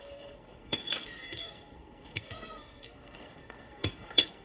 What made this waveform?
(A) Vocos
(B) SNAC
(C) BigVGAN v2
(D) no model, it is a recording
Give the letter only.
B